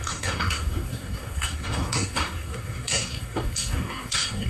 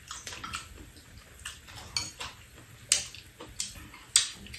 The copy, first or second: first